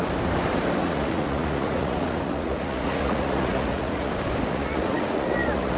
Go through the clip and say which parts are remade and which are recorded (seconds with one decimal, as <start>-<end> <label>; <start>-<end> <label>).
0.0-0.8 recorded; 0.8-4.1 remade; 4.1-4.5 recorded; 4.5-5.8 remade